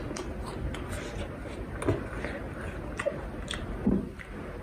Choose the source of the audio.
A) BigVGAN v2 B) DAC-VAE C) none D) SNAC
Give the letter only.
C